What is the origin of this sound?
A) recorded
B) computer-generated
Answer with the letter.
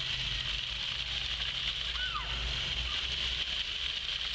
A